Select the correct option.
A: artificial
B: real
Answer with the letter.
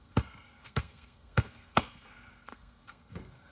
A